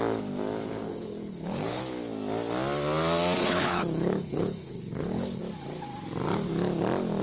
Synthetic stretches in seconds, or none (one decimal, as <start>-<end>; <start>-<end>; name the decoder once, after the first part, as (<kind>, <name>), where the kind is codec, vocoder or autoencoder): 0.9-1.8 (codec, HILCodec); 3.4-5.4